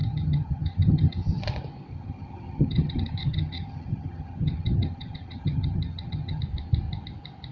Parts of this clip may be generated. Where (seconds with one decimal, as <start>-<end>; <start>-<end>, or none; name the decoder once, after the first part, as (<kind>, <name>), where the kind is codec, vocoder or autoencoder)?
0.0-1.4 (vocoder, HiFi-GAN); 1.9-6.4